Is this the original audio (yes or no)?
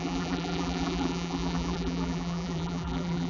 no